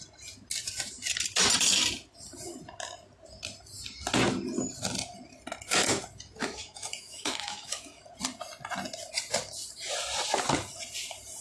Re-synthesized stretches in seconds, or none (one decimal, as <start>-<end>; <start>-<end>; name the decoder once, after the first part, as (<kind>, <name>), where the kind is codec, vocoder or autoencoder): 6.4-8.0 (autoencoder, DAC-VAE)